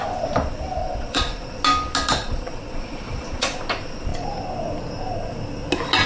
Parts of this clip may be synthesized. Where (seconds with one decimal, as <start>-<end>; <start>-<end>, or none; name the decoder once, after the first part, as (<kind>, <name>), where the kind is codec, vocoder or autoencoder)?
0.8-1.6 (vocoder, Vocos); 2.2-3.6

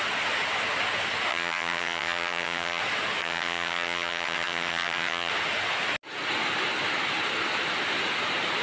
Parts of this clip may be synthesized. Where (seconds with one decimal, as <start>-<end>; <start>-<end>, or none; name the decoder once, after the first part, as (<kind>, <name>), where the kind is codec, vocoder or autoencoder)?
1.3-2.8 (vocoder, HiFi-GAN); 3.2-5.3

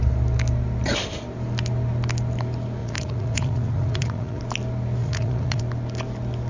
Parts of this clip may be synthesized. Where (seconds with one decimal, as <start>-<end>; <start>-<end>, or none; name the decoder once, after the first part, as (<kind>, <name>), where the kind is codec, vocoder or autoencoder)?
2.8-4.4 (vocoder, Vocos); 5.0-5.6

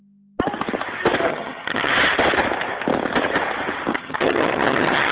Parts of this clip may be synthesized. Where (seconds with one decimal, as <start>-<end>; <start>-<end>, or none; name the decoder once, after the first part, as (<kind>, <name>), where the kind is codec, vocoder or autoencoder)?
1.3-1.9 (vocoder, HiFi-GAN); 3.9-5.1

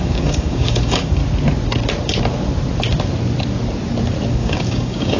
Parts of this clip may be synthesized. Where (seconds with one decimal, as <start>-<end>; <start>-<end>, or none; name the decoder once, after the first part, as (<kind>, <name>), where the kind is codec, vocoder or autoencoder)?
0.0-1.2 (codec, DAC); 4.3-5.2

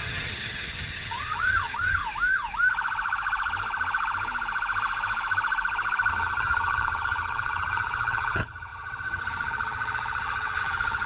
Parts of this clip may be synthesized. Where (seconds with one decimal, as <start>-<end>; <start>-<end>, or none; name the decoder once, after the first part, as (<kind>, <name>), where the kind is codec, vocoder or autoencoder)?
0.0-2.0 (vocoder, HiFi-GAN); 6.1-11.1

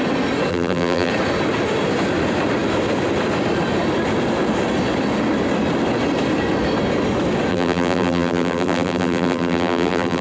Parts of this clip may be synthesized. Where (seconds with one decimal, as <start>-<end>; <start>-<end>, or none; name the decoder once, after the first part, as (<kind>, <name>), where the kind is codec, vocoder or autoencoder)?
0.5-1.1 (vocoder, BigVGAN v2); 7.5-10.2

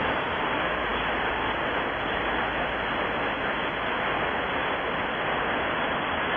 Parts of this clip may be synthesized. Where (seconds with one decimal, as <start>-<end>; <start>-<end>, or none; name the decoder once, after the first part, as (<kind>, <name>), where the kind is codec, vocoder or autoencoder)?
none